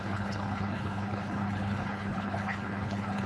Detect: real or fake fake